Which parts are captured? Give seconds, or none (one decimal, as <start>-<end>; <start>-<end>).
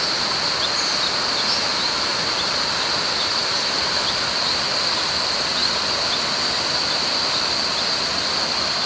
0.0-8.9